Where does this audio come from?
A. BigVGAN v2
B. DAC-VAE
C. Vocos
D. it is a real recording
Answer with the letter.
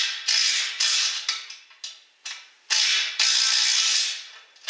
D